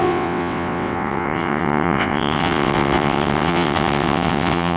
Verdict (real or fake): fake